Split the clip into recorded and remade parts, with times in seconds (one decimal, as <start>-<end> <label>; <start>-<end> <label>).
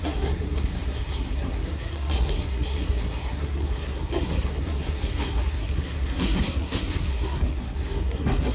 0.0-8.5 remade